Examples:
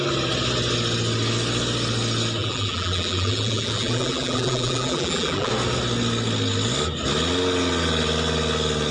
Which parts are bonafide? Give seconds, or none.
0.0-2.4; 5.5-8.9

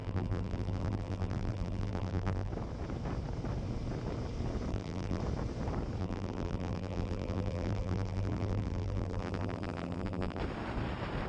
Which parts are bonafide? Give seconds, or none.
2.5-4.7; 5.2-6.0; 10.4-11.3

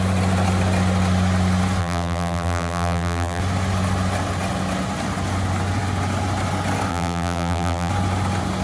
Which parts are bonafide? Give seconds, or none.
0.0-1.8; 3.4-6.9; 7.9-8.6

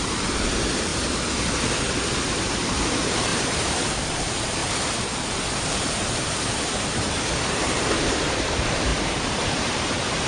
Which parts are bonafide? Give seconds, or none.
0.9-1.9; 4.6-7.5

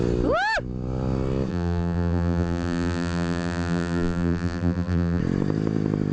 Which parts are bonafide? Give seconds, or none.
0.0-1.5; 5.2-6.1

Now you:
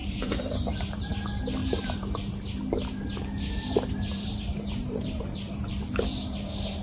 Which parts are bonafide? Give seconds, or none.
1.1-1.6; 2.1-4.1; 5.7-6.8